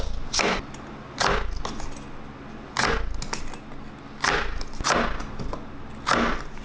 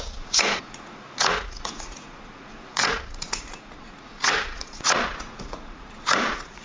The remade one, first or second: second